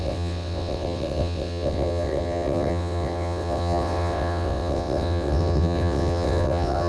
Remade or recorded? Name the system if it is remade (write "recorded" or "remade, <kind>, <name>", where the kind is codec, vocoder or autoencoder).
remade, vocoder, WaveNeXt